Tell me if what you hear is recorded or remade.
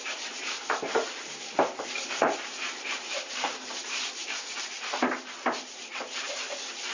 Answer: remade